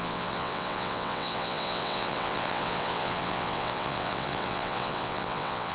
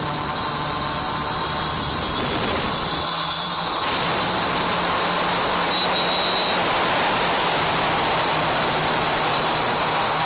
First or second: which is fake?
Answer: first